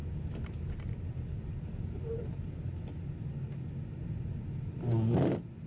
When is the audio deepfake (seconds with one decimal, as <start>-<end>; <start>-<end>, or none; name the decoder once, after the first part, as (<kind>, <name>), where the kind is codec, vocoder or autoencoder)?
none